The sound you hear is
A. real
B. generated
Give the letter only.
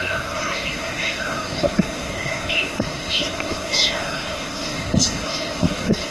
B